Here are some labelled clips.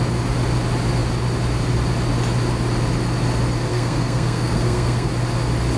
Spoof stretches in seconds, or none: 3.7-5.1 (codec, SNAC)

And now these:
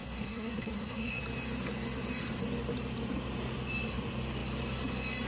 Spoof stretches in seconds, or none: 0.0-1.2 (codec, SNAC)

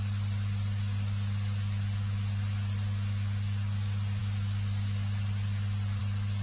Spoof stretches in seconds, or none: none

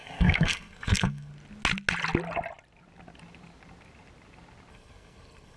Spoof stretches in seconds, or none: 0.0-1.3 (codec, SNAC); 4.7-5.6

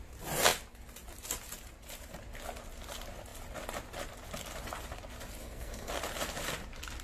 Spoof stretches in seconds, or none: 5.4-5.9 (codec, SNAC)

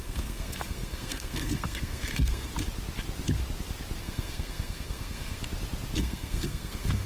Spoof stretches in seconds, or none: 0.0-2.5 (codec, SNAC); 4.0-5.4; 6.0-7.1

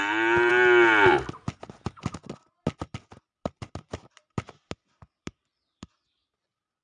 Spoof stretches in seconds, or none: none